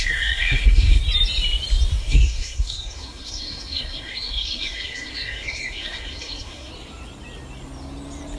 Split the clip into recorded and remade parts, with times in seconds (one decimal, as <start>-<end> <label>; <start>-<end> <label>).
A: 0.0-1.0 remade; 1.0-2.0 recorded; 2.0-6.7 remade; 6.7-8.4 recorded